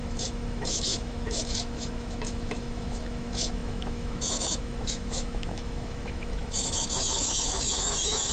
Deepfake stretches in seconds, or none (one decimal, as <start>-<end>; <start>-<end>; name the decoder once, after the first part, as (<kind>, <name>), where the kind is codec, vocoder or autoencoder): 0.0-8.3 (autoencoder, DAC-VAE)